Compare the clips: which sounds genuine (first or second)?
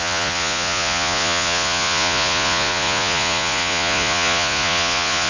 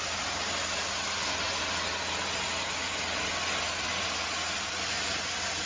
second